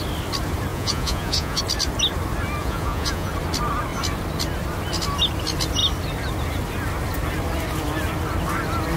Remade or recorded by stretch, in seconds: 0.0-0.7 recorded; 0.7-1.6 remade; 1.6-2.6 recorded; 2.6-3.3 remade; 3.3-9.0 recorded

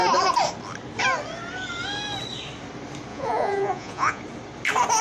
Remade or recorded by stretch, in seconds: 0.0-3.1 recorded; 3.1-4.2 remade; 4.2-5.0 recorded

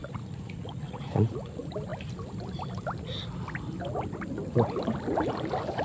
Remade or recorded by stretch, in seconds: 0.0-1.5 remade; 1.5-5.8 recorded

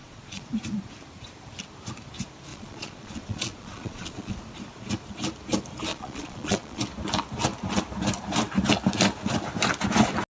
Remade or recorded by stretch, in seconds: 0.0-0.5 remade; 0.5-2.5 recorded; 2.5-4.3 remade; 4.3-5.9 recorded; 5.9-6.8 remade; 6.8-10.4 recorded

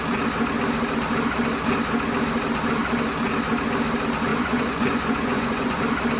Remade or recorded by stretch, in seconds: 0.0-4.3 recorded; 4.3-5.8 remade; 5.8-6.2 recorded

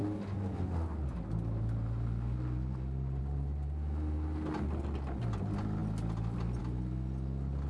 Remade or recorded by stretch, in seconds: 0.0-7.7 recorded